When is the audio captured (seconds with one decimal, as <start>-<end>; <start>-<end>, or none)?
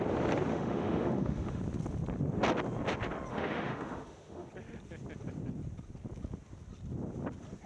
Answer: 0.0-0.5; 1.6-3.3; 4.5-7.7